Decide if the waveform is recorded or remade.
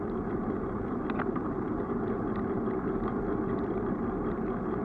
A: recorded